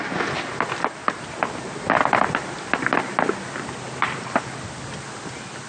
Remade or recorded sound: recorded